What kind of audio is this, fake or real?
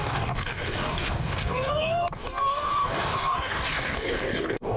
fake